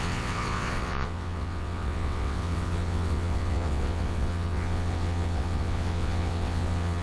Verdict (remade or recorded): remade